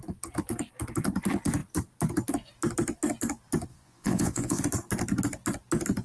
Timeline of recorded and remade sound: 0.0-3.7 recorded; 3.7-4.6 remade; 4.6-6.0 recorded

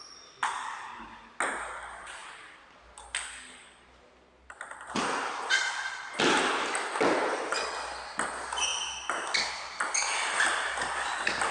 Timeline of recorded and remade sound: 0.0-11.5 recorded

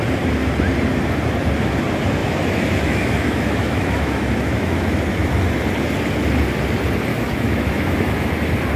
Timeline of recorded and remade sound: 0.0-2.2 recorded; 2.2-5.3 remade; 5.3-7.1 recorded; 7.1-8.3 remade; 8.3-8.8 recorded

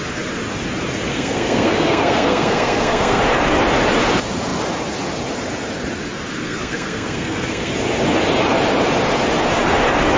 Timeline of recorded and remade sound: 0.0-1.1 recorded; 1.1-3.2 remade; 3.2-6.4 recorded; 6.4-7.7 remade; 7.7-10.2 recorded

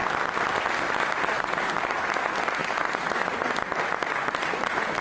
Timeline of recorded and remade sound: 0.0-5.0 recorded

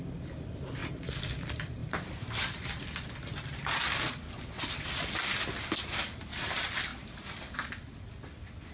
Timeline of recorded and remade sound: 0.0-1.8 recorded; 1.8-5.0 remade; 5.0-6.9 recorded; 6.9-8.7 remade

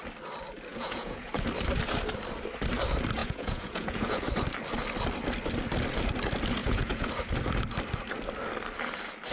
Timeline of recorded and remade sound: 0.0-0.7 recorded; 0.7-1.3 remade; 1.3-3.2 recorded; 3.2-4.2 remade; 4.2-6.6 recorded; 6.6-7.1 remade; 7.1-9.3 recorded